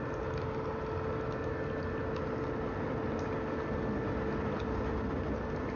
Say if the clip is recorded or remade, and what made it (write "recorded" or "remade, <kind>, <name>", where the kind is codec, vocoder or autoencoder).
recorded